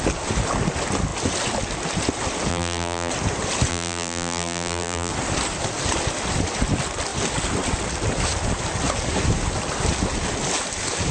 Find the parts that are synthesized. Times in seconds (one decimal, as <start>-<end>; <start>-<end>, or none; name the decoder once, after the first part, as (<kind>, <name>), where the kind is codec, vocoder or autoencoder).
2.5-3.1 (vocoder, BigVGAN v2); 3.7-5.1